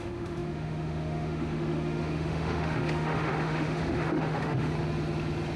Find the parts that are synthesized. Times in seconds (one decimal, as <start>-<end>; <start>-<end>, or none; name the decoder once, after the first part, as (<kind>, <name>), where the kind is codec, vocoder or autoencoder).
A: 0.0-4.7 (autoencoder, DAC-VAE)